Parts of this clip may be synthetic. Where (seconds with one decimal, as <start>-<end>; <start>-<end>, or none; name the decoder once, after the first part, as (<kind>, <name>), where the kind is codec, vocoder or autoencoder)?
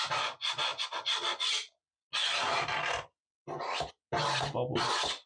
none